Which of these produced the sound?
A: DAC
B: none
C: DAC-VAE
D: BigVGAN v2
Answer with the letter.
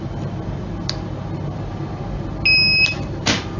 B